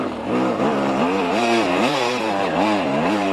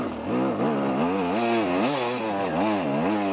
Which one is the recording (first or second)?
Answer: second